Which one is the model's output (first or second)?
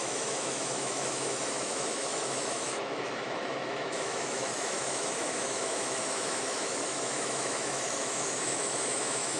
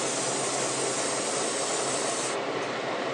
first